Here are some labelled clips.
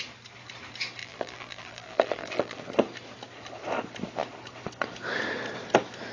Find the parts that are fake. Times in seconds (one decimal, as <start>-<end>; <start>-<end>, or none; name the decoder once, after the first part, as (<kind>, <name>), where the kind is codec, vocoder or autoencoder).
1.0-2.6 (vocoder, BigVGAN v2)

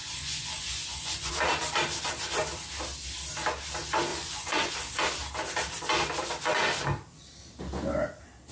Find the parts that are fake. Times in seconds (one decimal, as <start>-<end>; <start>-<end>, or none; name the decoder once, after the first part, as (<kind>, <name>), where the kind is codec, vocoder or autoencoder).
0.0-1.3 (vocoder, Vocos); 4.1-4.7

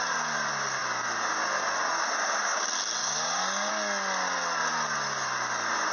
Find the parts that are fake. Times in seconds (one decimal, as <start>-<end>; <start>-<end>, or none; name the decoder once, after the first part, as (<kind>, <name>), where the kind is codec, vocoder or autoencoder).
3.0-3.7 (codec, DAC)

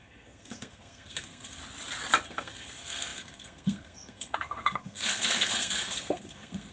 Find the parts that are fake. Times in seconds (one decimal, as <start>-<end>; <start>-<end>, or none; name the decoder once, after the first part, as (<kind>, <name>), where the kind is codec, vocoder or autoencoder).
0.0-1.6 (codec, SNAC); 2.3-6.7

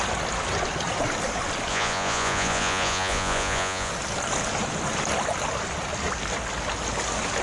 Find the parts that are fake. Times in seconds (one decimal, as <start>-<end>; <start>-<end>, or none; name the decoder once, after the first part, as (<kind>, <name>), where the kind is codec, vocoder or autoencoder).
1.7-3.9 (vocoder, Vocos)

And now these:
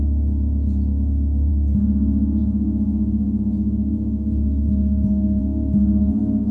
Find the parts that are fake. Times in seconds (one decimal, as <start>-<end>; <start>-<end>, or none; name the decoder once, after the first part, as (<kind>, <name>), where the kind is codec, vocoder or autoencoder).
none

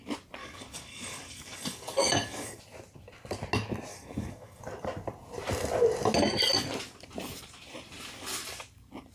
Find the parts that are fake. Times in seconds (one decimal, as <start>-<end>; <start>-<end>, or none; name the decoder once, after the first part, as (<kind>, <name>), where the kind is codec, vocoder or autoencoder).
0.4-2.6 (codec, DAC); 3.9-4.6

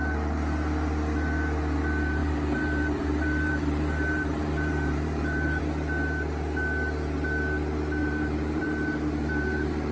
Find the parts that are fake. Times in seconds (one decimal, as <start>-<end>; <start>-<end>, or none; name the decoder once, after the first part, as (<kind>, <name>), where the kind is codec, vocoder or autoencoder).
2.2-5.6 (vocoder, BigVGAN v2); 8.0-9.9